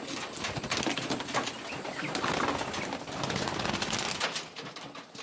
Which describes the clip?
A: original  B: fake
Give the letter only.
A